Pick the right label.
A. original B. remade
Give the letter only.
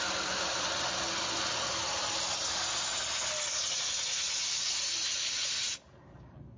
A